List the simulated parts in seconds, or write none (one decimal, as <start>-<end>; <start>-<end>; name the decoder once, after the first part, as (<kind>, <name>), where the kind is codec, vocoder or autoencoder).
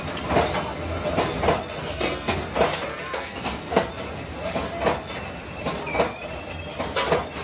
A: 1.8-2.4 (codec, SNAC); 2.9-3.9